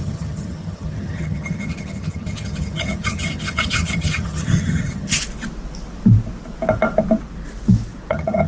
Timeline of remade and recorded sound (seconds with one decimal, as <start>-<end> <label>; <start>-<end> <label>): 0.0-5.2 remade; 5.2-8.1 recorded; 8.1-8.5 remade